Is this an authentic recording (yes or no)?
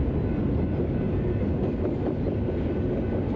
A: yes